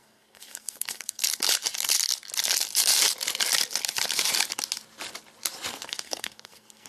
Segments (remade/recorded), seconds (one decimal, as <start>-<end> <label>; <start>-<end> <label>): 0.0-1.2 remade; 1.2-5.7 recorded; 5.7-6.9 remade